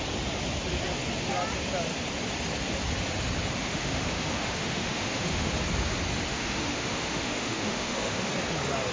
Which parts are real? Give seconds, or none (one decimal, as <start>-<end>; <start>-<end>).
0.0-3.6; 5.5-6.3; 8.3-8.9